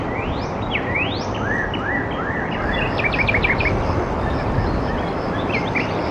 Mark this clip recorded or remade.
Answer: recorded